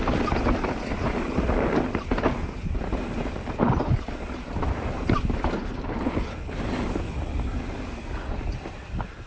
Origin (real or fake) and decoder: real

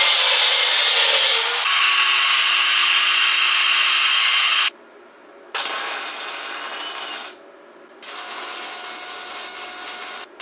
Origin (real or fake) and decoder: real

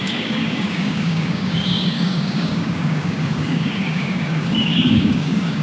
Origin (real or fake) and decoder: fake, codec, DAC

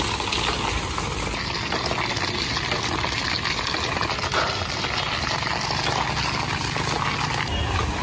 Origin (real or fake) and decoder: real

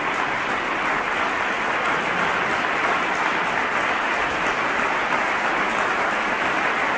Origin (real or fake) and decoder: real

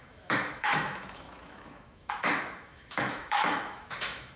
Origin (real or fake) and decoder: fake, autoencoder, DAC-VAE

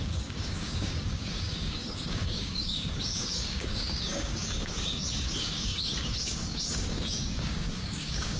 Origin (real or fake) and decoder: fake, codec, DAC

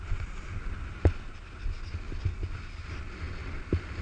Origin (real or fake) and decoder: real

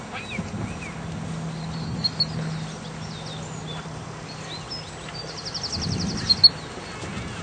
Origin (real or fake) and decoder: real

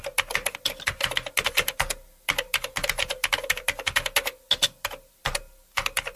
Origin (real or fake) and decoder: real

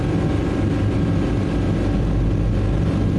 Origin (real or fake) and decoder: real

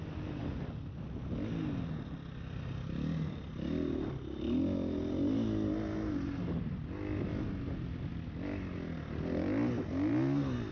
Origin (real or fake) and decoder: real